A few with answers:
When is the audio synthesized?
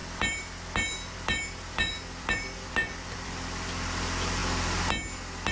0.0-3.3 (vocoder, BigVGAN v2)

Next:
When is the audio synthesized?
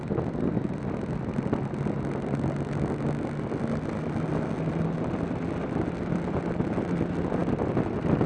none